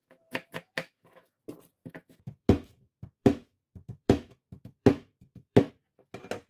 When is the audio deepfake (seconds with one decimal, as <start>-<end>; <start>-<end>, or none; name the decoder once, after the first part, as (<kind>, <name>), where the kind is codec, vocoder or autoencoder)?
0.0-1.4 (autoencoder, DAC-VAE); 1.8-5.7